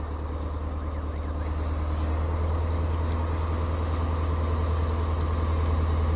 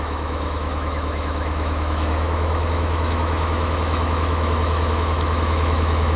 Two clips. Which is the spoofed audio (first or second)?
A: second